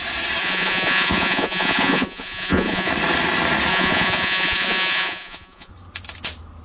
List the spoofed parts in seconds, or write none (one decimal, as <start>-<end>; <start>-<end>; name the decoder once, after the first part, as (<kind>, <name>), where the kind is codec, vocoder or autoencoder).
0.4-2.9 (vocoder, Vocos); 3.7-5.7